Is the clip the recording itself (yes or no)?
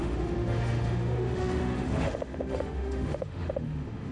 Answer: no